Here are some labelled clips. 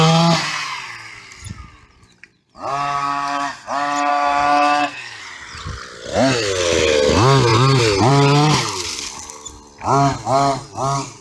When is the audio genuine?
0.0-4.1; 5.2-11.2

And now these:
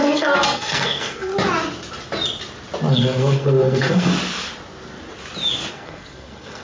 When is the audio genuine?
1.3-2.9; 4.1-5.7